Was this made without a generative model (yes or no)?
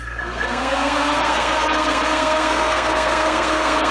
no